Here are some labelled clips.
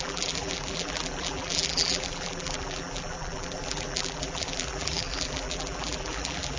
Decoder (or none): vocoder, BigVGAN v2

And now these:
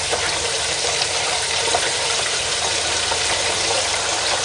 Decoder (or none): vocoder, BigVGAN v2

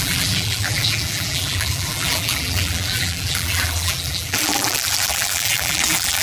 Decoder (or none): vocoder, BigVGAN v2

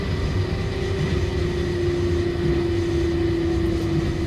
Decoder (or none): none